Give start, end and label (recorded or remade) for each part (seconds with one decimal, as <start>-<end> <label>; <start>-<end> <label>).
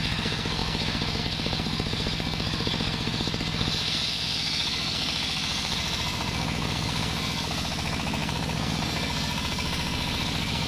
0.0-10.7 remade